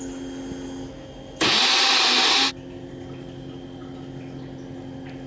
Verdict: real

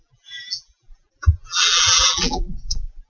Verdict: fake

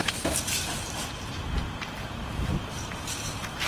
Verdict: fake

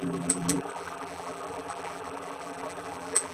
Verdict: fake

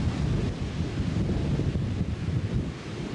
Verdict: real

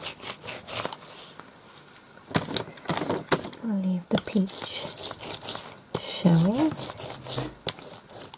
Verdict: real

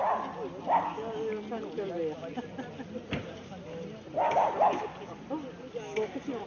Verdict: real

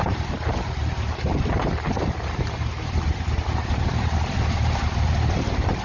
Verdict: fake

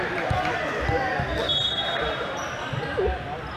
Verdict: real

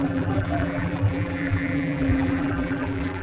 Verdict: fake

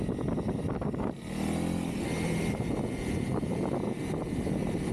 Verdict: real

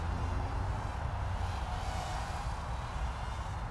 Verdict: real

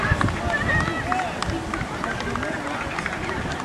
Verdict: real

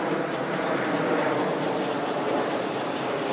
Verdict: real